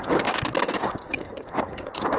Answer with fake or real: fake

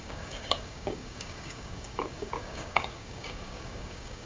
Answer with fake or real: fake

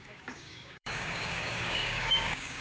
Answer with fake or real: fake